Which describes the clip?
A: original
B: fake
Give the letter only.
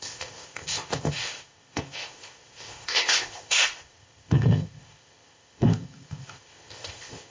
B